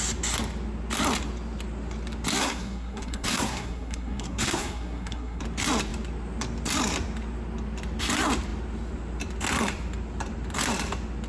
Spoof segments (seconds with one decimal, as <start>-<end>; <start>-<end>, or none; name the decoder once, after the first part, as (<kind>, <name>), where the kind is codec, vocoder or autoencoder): 2.4-5.4 (codec, SNAC)